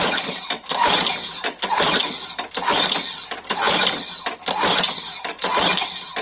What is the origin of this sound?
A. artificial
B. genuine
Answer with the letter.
B